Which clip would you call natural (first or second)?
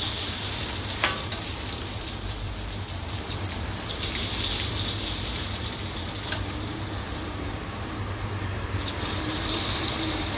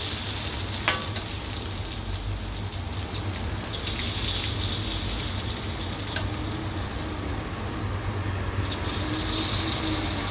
second